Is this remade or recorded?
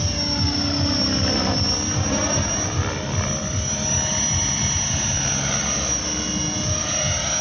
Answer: recorded